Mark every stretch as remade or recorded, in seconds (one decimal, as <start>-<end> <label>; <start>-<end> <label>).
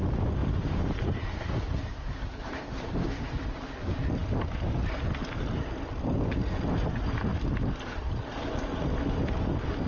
0.0-0.4 recorded; 0.4-1.2 remade; 1.2-1.9 recorded; 1.9-2.9 remade; 2.9-9.9 recorded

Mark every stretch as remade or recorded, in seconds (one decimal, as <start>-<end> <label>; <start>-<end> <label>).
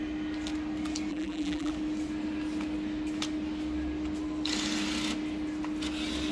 0.0-1.1 recorded; 1.1-1.7 remade; 1.7-6.3 recorded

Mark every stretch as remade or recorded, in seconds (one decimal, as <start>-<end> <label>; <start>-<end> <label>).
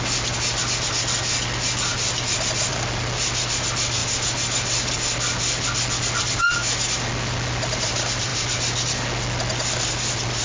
0.0-4.0 remade; 4.0-4.9 recorded; 4.9-10.4 remade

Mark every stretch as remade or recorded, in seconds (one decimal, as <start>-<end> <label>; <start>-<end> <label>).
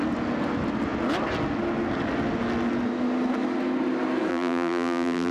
0.0-4.3 recorded; 4.3-5.3 remade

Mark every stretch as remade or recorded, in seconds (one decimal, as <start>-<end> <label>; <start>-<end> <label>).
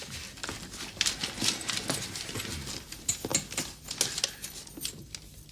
0.0-5.5 recorded